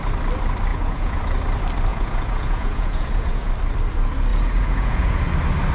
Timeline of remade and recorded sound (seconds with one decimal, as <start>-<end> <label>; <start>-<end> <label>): 0.0-0.7 recorded; 0.7-1.2 remade; 1.2-1.9 recorded; 1.9-3.5 remade; 3.5-4.3 recorded; 4.3-5.2 remade; 5.2-5.7 recorded